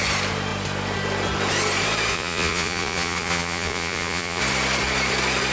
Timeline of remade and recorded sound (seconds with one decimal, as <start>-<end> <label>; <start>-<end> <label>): 0.0-2.1 recorded; 2.1-4.4 remade; 4.4-5.5 recorded